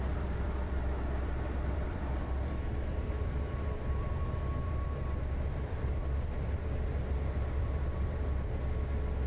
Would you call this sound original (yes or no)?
no